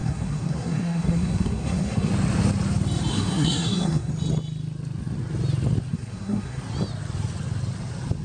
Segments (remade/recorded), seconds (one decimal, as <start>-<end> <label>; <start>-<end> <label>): 0.0-2.1 remade; 2.1-3.1 recorded; 3.1-4.1 remade; 4.1-5.9 recorded; 5.9-6.6 remade; 6.6-8.2 recorded